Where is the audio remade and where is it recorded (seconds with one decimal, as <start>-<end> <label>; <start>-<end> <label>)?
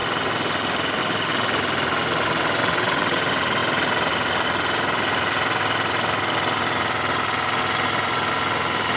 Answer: 0.0-2.6 recorded; 2.6-3.2 remade; 3.2-9.0 recorded